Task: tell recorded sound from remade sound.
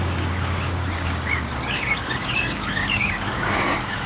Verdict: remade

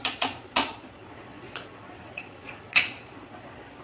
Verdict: remade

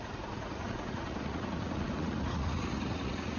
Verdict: remade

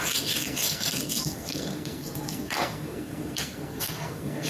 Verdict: remade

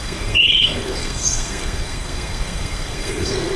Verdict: remade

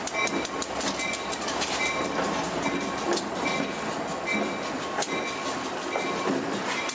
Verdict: recorded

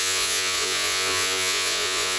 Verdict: remade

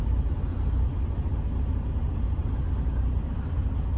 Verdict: remade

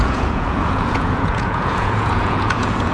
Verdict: remade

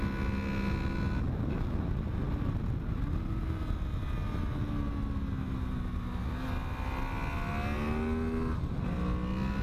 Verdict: recorded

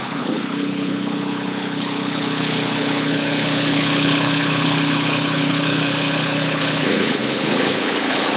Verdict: remade